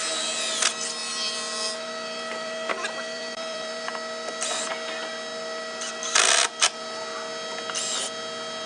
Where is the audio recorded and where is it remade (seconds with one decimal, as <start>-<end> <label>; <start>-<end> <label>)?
0.0-1.0 recorded; 1.0-3.9 remade; 3.9-8.7 recorded